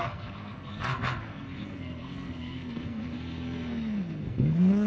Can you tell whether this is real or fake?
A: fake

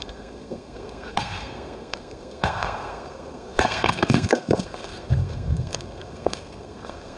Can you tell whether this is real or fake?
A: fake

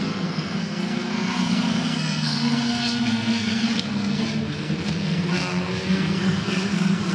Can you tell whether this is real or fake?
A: fake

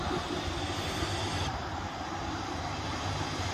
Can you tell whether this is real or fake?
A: real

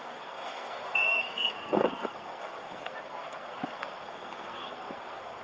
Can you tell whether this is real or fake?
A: fake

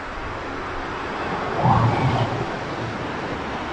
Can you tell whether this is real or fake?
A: real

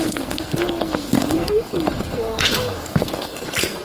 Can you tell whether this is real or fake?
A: fake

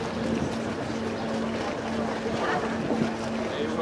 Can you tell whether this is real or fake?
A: real